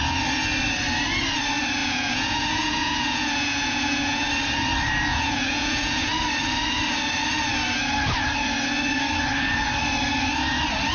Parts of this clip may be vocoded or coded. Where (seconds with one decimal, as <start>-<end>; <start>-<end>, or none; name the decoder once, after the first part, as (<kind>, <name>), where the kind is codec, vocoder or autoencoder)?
1.8-4.3 (vocoder, Vocos); 5.1-6.1